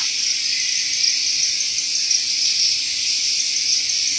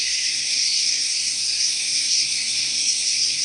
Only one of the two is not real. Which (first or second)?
second